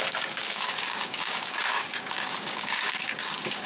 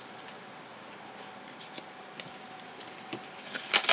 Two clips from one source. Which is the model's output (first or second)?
first